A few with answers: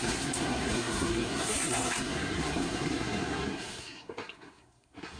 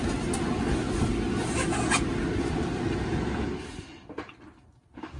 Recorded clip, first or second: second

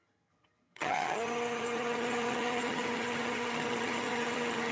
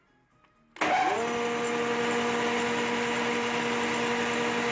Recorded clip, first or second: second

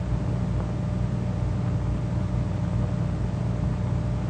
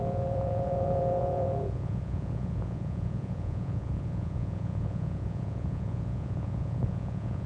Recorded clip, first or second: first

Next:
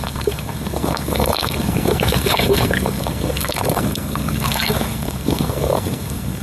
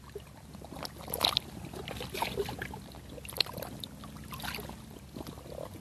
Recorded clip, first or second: second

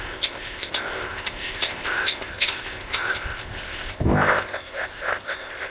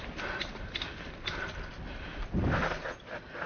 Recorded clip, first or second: second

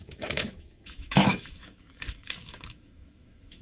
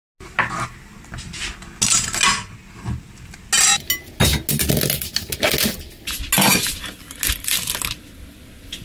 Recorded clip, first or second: second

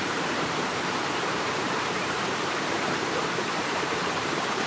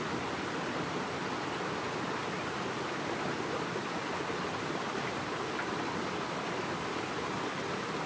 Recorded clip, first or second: second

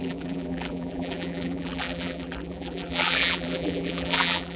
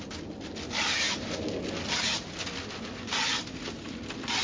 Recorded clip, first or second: second